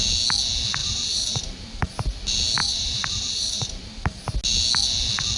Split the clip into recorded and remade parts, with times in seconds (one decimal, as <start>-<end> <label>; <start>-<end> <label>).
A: 0.0-0.8 recorded; 0.8-1.9 remade; 1.9-2.6 recorded; 2.6-3.8 remade; 3.8-5.4 recorded